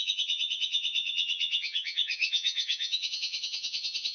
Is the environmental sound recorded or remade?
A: remade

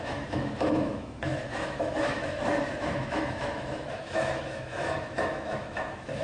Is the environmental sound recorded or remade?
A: remade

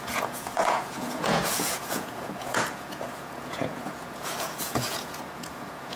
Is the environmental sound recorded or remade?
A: remade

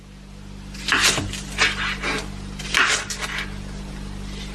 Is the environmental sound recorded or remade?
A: recorded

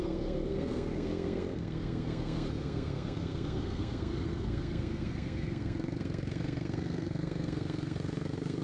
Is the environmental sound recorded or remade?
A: remade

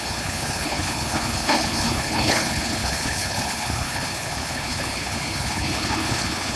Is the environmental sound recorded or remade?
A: remade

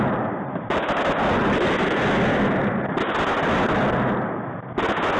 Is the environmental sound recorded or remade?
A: recorded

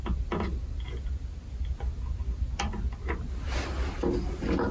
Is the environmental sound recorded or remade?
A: recorded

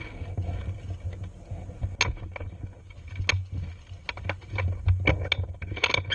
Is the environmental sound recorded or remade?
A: recorded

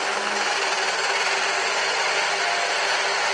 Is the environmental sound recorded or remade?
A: recorded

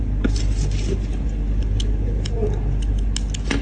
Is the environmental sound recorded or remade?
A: recorded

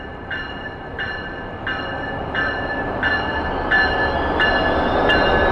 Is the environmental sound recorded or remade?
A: recorded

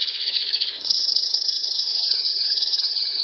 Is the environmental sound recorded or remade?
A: remade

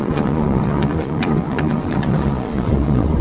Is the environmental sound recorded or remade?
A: remade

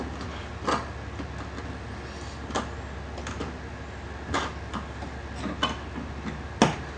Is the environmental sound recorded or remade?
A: recorded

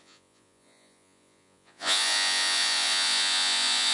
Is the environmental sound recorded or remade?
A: remade